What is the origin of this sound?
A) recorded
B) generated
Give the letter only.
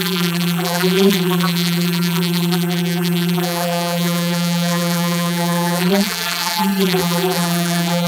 B